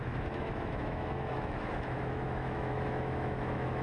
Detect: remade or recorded remade